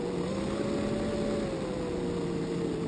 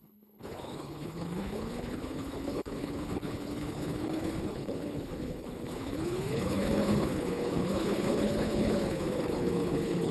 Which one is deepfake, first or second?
second